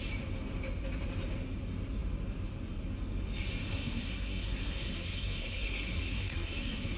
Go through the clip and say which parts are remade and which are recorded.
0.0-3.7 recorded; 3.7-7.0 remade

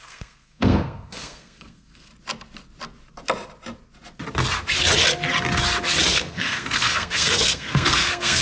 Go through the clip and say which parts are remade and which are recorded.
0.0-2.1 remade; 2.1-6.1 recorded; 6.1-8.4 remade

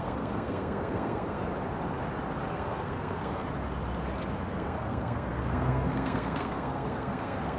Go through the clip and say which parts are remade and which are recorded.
0.0-1.5 remade; 1.5-2.5 recorded; 2.5-3.4 remade; 3.4-4.5 recorded; 4.5-7.6 remade

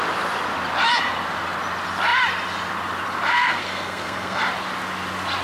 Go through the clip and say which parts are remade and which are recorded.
0.0-3.3 recorded; 3.3-4.4 remade; 4.4-5.4 recorded